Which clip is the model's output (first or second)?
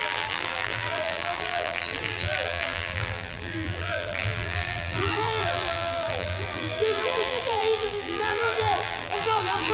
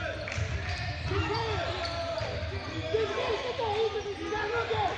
first